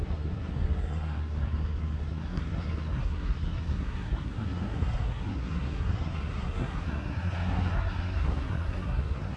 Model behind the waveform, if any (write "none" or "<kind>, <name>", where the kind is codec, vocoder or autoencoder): codec, SNAC